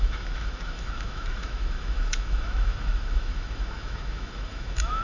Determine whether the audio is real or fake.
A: fake